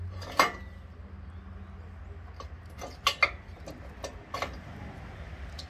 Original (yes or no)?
yes